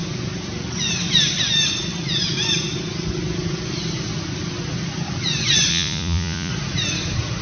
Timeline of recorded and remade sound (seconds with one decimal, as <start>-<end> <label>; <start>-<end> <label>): 0.0-5.7 recorded; 5.7-6.5 remade; 6.5-7.4 recorded